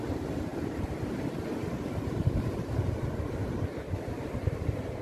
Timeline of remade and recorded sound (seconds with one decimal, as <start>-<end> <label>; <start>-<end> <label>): 0.0-0.5 recorded; 0.5-1.2 remade; 1.2-5.0 recorded